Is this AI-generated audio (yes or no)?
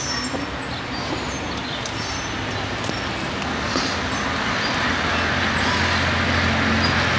no